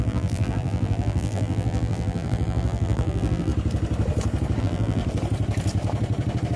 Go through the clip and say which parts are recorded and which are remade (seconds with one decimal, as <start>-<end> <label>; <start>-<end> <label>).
0.0-3.5 remade; 3.5-4.6 recorded; 4.6-5.0 remade; 5.0-6.6 recorded